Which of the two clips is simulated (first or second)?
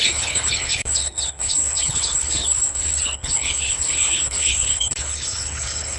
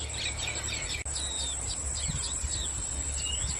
first